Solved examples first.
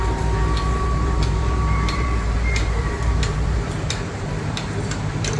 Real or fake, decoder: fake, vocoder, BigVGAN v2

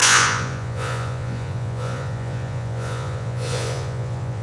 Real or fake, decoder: fake, vocoder, Vocos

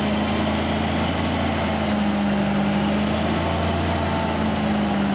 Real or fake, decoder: real